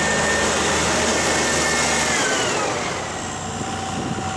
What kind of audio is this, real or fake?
real